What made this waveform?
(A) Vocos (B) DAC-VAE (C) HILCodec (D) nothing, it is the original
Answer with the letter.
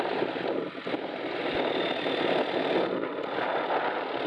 D